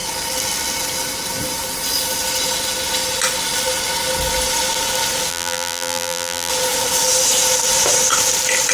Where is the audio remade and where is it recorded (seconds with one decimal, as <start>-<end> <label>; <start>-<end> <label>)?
0.0-5.3 recorded; 5.3-6.5 remade; 6.5-8.7 recorded